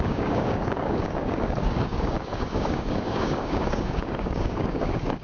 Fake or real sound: fake